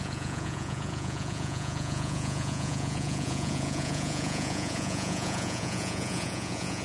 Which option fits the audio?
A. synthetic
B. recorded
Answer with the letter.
A